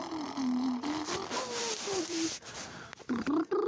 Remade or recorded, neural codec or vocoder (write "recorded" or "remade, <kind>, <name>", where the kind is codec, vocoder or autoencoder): remade, vocoder, BigVGAN v2